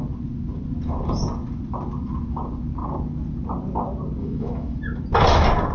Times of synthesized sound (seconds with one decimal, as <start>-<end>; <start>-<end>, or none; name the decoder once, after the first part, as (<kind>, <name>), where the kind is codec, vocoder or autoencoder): 4.2-4.8 (autoencoder, DAC-VAE)